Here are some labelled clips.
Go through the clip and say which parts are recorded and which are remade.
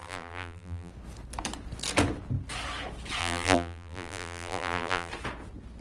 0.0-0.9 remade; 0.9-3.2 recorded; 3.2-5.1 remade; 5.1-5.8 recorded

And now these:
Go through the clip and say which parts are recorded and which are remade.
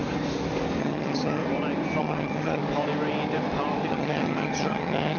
0.0-0.8 recorded; 0.8-1.4 remade; 1.4-2.0 recorded; 2.0-2.6 remade; 2.6-3.9 recorded; 3.9-5.2 remade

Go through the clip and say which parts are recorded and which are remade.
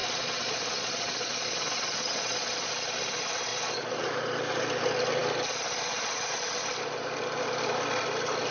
0.0-2.7 remade; 2.7-3.5 recorded; 3.5-4.1 remade; 4.1-8.5 recorded